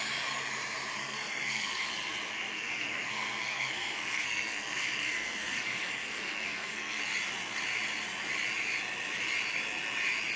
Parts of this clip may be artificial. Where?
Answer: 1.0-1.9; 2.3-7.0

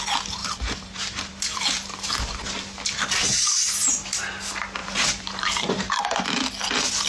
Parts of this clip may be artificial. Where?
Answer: 0.4-1.9; 4.8-6.0